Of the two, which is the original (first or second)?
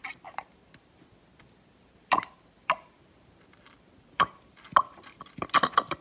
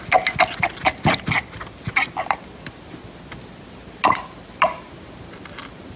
second